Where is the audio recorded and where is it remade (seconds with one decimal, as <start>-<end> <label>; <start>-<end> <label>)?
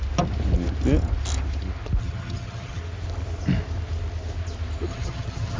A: 0.0-2.0 recorded; 2.0-2.8 remade; 2.8-4.9 recorded; 4.9-5.6 remade